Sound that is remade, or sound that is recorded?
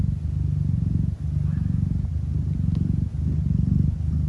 recorded